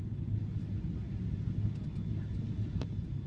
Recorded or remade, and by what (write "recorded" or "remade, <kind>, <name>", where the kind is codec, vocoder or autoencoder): recorded